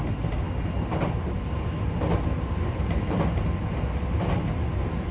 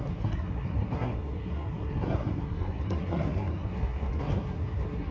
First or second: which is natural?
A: first